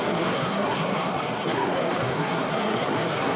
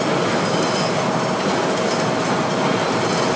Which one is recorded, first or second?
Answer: second